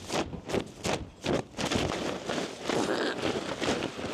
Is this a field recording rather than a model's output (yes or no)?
yes